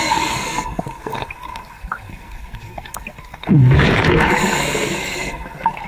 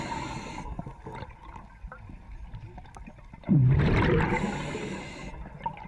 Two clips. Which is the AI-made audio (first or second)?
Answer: first